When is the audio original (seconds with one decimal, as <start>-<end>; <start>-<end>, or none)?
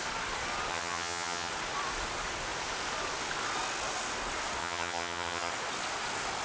0.0-0.7; 1.5-4.6; 5.5-6.4